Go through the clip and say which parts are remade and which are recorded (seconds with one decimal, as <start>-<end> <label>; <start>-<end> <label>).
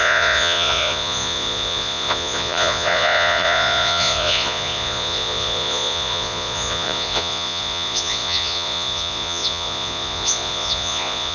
0.0-11.3 remade